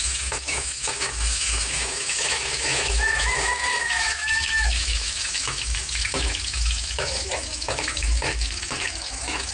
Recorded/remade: remade